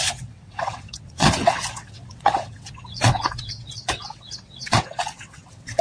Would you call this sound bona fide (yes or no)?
no